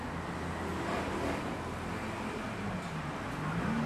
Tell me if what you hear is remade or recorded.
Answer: recorded